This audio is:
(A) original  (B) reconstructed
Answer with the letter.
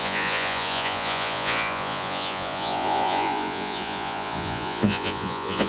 B